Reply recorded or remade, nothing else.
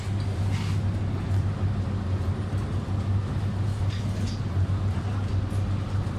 recorded